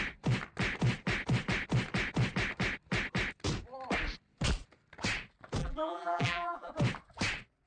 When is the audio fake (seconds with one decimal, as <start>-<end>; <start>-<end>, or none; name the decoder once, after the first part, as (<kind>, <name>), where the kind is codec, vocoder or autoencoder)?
5.6-6.7 (vocoder, BigVGAN v2)